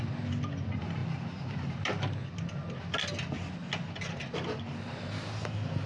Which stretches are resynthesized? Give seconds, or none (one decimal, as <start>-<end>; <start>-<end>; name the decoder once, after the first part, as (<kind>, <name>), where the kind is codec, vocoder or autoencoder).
none